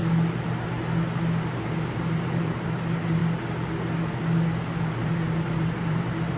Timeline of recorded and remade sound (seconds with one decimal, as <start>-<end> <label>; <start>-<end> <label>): 0.0-1.5 recorded; 1.5-3.2 remade; 3.2-4.8 recorded; 4.8-6.4 remade